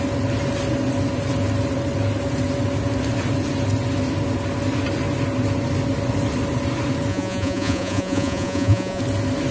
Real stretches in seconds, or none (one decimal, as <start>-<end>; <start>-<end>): 0.0-7.1; 9.0-9.5